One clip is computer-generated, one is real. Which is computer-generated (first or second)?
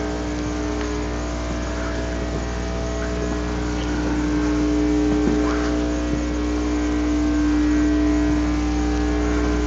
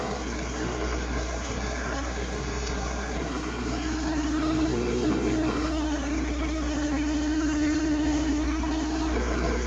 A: second